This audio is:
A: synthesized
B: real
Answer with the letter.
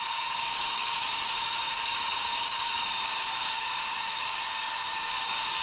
A